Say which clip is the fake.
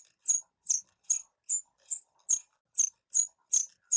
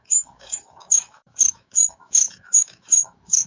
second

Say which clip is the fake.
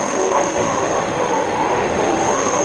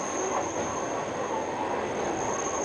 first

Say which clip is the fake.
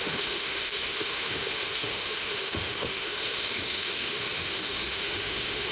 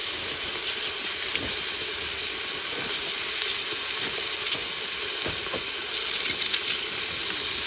first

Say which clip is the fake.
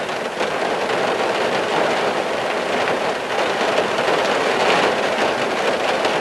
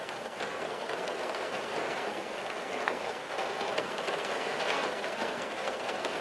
second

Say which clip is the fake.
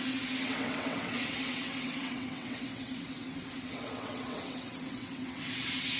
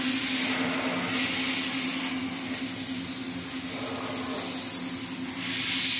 first